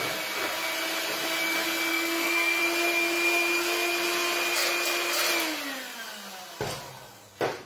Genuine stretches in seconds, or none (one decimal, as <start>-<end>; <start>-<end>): 0.0-1.9; 2.6-7.7